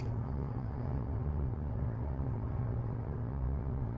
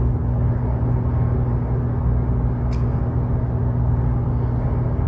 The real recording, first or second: second